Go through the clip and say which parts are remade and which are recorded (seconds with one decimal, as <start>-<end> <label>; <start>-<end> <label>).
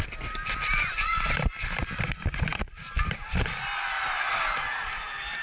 0.0-5.4 remade